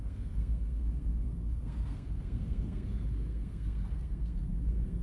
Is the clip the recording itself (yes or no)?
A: no